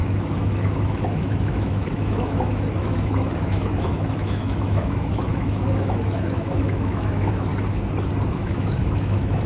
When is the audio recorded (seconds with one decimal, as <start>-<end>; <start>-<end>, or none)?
7.5-8.3